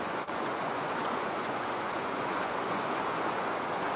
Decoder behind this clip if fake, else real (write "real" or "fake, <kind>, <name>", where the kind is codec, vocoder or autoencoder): fake, vocoder, Vocos